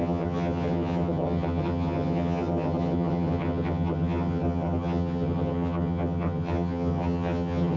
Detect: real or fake fake